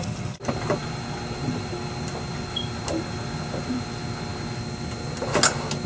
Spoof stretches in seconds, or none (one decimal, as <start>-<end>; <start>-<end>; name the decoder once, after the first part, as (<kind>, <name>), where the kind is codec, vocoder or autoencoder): none